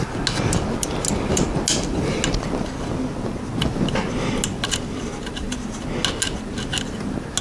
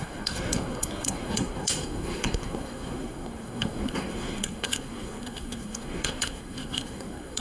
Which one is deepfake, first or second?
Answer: second